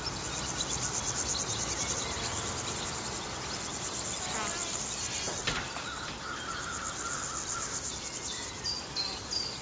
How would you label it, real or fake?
real